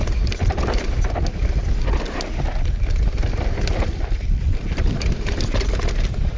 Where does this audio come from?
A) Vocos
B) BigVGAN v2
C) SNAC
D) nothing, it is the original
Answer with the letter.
D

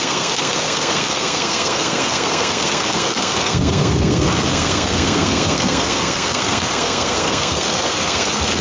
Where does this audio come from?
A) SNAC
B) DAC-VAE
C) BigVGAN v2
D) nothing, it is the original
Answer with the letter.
A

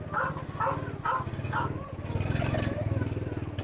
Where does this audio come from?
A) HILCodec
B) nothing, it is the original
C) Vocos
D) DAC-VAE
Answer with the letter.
B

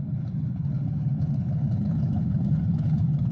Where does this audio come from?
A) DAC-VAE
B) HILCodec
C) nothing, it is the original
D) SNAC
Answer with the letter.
B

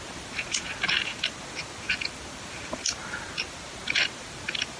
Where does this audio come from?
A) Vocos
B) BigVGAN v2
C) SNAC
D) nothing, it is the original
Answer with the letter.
D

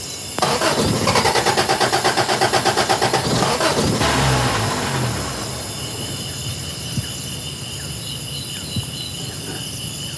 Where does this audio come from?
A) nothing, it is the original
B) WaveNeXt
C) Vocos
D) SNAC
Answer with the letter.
A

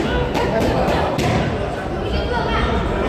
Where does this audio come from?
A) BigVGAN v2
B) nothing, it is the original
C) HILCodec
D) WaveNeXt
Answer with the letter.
B